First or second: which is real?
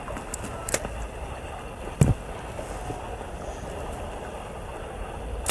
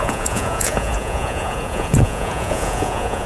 first